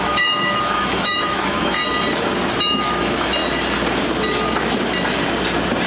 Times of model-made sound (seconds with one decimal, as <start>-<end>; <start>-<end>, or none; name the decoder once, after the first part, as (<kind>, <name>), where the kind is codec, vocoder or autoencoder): 0.0-1.8 (autoencoder, DAC-VAE); 2.6-3.4